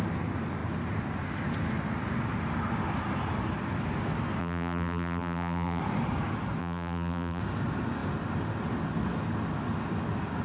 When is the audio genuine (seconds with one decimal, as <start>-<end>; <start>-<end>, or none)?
0.0-4.4; 5.8-6.6; 7.4-10.4